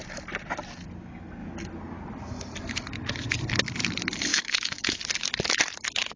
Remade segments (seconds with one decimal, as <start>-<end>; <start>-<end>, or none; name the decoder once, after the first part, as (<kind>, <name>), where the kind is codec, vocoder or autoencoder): 4.3-5.0 (autoencoder, DAC-VAE)